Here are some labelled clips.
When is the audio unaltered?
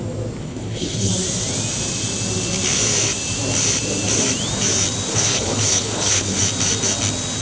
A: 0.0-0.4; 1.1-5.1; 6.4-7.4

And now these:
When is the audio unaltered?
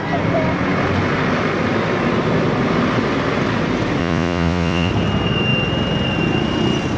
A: 0.0-4.0; 4.9-7.0